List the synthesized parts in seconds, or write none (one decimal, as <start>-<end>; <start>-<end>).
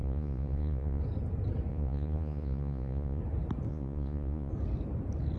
0.0-1.0; 1.7-3.2; 3.7-4.5